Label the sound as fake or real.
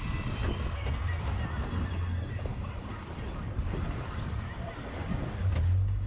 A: real